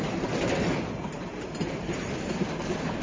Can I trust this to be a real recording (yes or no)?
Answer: yes